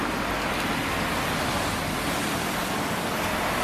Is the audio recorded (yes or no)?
yes